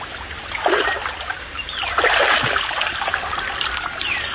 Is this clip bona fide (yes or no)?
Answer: yes